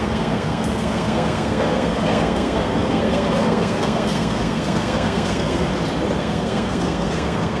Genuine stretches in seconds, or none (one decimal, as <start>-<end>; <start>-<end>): 5.7-6.2